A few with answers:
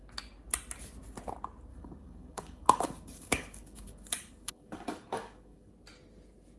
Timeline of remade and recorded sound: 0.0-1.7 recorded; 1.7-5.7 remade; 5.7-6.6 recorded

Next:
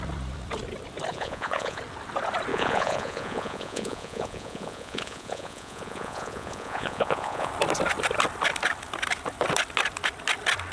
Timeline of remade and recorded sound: 0.0-1.1 recorded; 1.1-1.8 remade; 1.8-2.5 recorded; 2.5-7.5 remade; 7.5-10.7 recorded

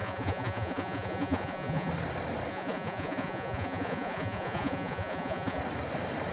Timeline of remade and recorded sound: 0.0-1.9 remade; 1.9-2.5 recorded; 2.5-5.6 remade; 5.6-6.3 recorded

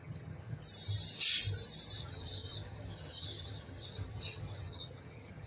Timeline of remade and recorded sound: 0.0-0.6 remade; 0.6-2.0 recorded; 2.0-5.5 remade

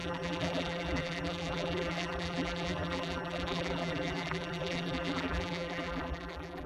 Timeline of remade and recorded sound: 0.0-6.7 remade

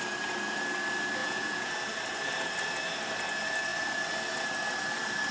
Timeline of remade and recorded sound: 0.0-1.2 recorded; 1.2-1.7 remade; 1.7-5.3 recorded